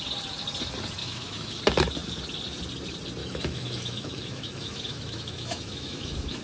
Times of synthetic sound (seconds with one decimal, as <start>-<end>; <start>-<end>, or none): 1.0-1.6; 3.2-6.4